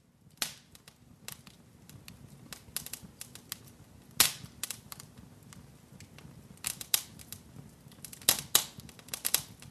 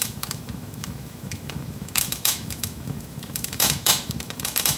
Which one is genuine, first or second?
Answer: first